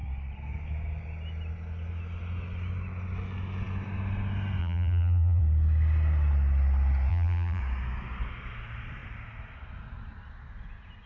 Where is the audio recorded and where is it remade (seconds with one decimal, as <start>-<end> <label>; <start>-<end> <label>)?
0.0-4.6 recorded; 4.6-5.4 remade; 5.4-7.1 recorded; 7.1-7.6 remade; 7.6-11.1 recorded